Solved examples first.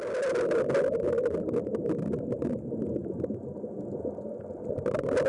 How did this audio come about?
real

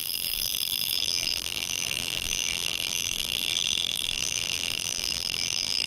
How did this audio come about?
fake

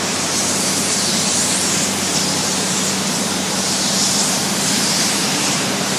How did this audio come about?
fake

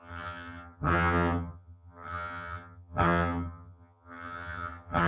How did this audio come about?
fake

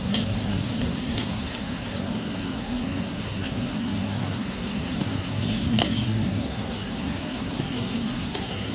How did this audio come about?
fake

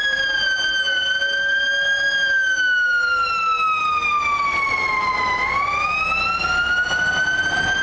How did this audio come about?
real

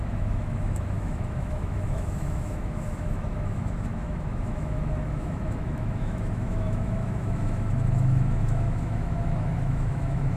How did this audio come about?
fake